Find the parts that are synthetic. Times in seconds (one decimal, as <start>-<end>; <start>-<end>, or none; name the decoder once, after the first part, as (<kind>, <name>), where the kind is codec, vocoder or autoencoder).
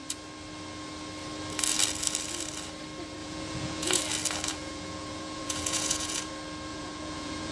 3.2-4.0 (vocoder, Vocos); 4.5-6.3; 6.7-7.5